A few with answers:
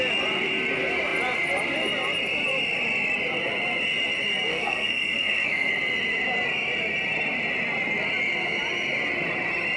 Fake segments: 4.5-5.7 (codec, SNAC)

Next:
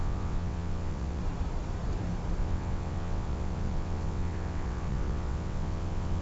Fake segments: 0.0-1.2 (vocoder, WaveNeXt); 2.4-6.2

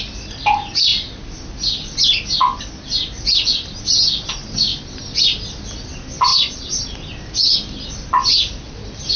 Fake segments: 6.3-6.8 (vocoder, Vocos)

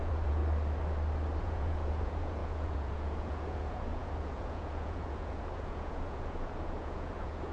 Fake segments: 0.0-0.4 (vocoder, Vocos); 1.4-7.5

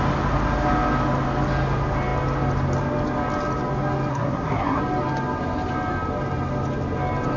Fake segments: 4.1-4.8 (codec, SNAC)